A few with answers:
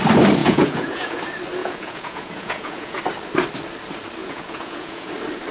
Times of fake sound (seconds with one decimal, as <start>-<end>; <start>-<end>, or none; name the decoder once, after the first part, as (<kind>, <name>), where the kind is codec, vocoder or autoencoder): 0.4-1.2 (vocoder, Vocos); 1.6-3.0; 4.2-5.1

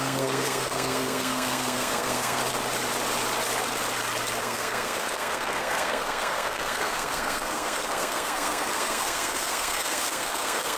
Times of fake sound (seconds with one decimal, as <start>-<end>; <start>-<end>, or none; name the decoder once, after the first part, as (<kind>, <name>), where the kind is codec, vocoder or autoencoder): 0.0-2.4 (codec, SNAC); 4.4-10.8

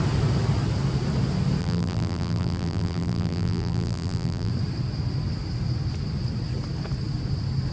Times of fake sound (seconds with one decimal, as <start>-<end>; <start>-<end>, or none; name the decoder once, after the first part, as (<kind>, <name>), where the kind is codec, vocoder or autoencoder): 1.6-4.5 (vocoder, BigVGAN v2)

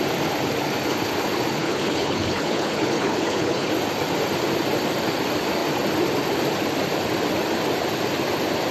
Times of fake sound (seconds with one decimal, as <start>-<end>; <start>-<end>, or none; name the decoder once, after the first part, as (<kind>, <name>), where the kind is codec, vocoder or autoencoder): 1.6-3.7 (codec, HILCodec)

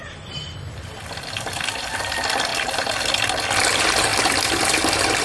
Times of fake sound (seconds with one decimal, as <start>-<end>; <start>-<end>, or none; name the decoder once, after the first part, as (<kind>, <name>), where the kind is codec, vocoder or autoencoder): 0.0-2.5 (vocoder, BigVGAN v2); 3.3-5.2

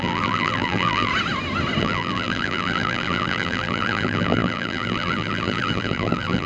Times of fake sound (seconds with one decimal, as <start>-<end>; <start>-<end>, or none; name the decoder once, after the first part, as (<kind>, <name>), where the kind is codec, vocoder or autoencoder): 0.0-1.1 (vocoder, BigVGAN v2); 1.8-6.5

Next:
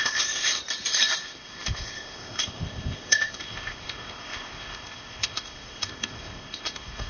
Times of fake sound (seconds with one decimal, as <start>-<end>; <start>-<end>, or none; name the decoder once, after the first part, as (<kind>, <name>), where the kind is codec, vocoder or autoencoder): 0.0-0.6 (codec, ZipCodec); 1.2-7.1

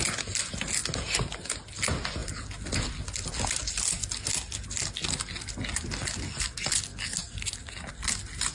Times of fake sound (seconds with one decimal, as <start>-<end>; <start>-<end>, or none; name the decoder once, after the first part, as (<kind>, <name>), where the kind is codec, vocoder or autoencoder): none